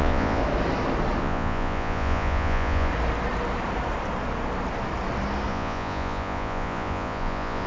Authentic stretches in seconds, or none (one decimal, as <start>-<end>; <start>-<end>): 0.4-1.2; 2.9-5.5